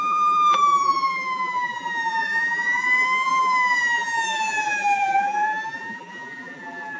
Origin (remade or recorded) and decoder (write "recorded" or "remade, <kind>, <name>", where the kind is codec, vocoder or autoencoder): remade, vocoder, BigVGAN v2